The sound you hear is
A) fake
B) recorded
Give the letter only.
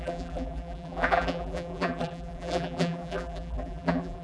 A